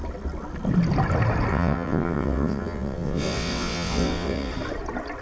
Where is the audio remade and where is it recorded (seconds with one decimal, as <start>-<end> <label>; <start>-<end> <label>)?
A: 0.0-1.5 recorded; 1.5-4.5 remade; 4.5-5.2 recorded